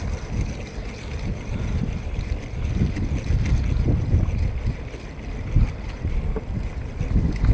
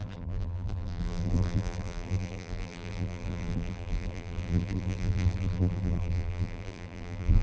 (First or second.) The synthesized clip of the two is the second